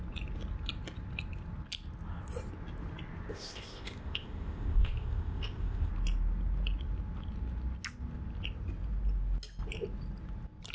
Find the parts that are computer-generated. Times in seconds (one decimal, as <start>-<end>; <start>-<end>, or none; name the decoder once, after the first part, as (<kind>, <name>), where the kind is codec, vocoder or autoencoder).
3.3-5.9 (codec, ZipCodec)